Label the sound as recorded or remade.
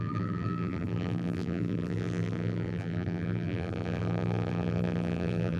remade